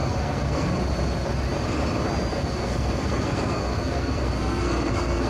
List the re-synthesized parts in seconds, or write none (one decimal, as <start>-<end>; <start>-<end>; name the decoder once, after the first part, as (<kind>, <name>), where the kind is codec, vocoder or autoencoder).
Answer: 0.0-0.7 (codec, SNAC); 2.3-5.3